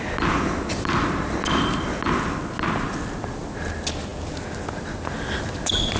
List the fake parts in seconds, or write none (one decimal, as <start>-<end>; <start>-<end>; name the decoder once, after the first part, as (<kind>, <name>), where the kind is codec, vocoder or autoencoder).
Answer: none